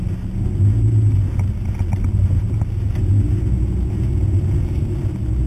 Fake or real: real